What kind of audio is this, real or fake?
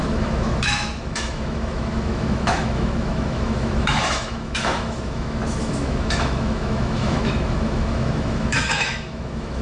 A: fake